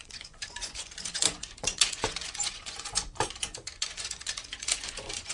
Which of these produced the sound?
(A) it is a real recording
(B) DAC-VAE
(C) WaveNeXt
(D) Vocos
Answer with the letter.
D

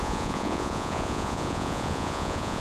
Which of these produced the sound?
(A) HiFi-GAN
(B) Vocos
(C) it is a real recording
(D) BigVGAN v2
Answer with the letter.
B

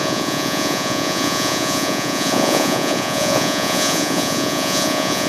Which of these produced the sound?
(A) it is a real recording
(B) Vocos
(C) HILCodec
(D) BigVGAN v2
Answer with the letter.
B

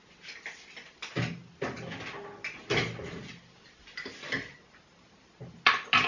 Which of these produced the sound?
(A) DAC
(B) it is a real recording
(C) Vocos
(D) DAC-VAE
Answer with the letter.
B